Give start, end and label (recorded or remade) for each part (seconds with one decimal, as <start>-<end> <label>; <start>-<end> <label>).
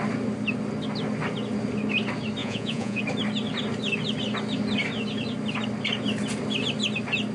0.0-2.4 recorded; 2.4-3.0 remade; 3.0-7.3 recorded